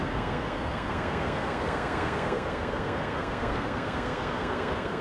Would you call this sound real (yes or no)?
no